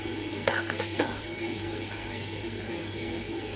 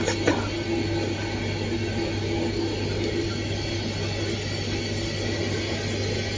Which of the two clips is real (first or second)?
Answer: second